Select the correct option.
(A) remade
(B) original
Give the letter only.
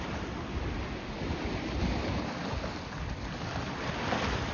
B